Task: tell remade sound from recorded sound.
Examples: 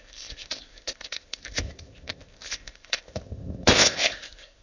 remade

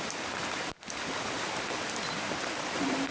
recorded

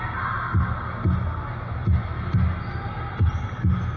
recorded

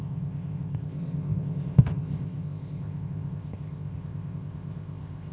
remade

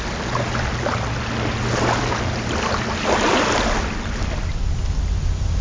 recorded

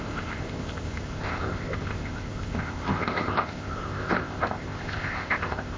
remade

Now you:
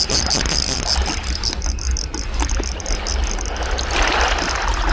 recorded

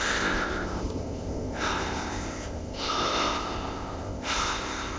remade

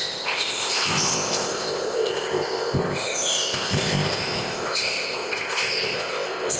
remade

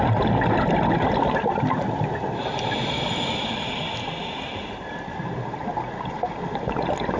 recorded